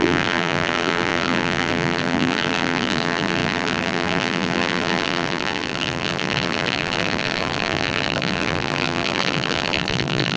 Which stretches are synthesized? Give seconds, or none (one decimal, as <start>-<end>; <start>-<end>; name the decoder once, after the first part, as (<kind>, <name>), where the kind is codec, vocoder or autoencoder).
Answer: 0.0-10.4 (vocoder, BigVGAN v2)